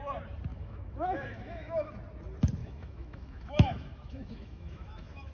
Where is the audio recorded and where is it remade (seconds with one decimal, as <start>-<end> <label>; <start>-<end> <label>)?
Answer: 0.0-0.5 recorded; 0.5-1.9 remade; 1.9-2.6 recorded; 2.6-5.3 remade